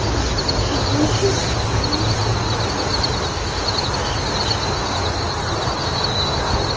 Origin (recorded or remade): recorded